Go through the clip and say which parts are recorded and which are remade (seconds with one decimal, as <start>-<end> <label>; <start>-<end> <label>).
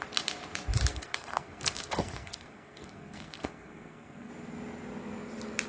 0.0-0.9 recorded; 0.9-4.3 remade; 4.3-5.7 recorded